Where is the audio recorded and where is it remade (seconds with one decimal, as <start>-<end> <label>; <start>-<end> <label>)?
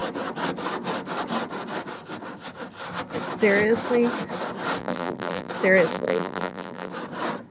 0.0-4.8 recorded; 4.8-5.5 remade; 5.5-5.9 recorded; 5.9-6.9 remade; 6.9-7.5 recorded